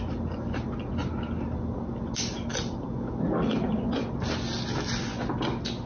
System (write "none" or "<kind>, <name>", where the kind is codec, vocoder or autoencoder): none